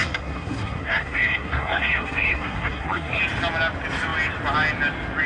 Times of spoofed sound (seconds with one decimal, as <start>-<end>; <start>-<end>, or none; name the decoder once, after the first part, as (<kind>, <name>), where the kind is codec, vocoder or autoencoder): 0.0-3.2 (codec, SNAC)